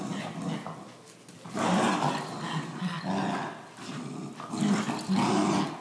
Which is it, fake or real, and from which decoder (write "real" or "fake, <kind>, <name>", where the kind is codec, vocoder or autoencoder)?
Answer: real